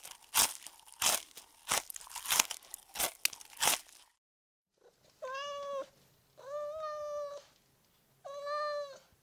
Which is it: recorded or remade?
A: recorded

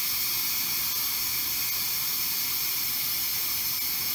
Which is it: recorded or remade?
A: recorded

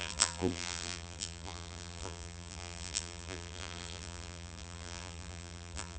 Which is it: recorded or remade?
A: remade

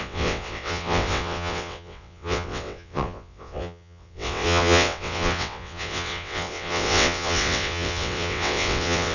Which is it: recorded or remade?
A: remade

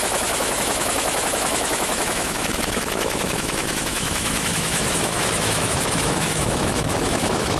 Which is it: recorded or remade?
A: remade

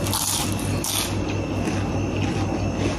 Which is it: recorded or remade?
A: recorded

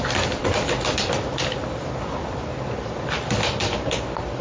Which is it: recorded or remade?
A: recorded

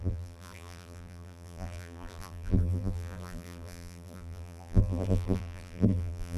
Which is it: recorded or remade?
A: remade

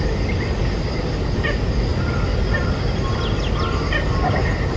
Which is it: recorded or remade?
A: recorded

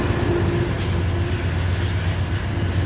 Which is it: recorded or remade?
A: recorded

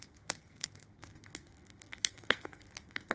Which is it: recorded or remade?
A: remade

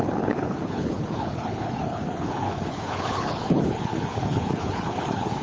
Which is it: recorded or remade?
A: remade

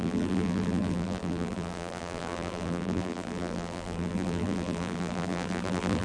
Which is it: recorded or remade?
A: remade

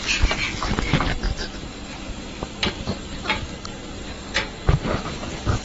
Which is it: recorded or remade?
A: recorded